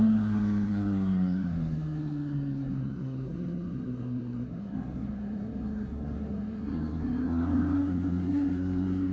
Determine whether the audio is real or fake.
fake